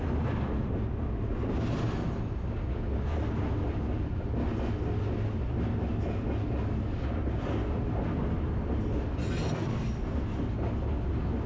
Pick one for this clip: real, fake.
real